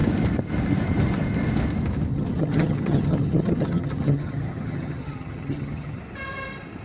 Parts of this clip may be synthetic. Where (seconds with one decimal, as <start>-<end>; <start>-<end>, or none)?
2.1-6.0